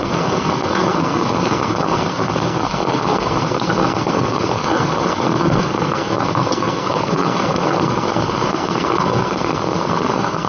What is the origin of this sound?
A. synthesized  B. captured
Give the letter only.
A